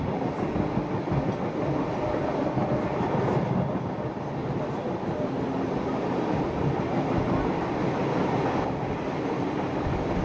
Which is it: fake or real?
real